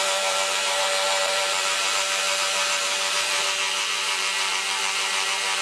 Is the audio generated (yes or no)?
yes